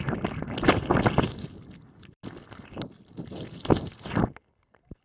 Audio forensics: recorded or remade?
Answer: recorded